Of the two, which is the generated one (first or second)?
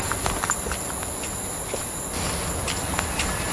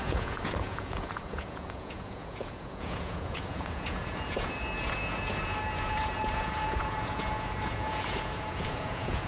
second